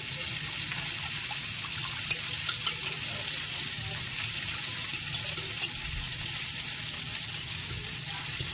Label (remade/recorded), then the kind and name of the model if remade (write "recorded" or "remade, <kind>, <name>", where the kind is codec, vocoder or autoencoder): recorded